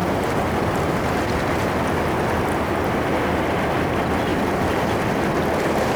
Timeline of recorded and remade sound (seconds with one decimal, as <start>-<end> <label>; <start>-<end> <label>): 0.0-1.7 remade; 1.7-6.0 recorded